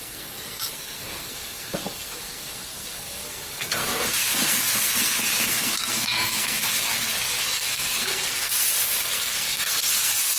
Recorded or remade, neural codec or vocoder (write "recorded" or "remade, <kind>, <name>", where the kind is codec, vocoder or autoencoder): remade, codec, SNAC